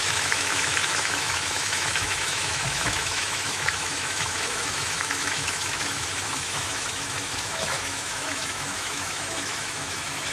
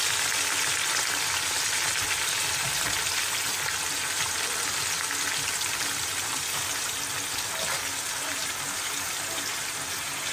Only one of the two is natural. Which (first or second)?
second